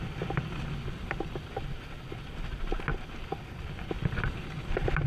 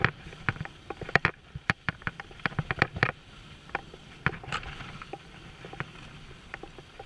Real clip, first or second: first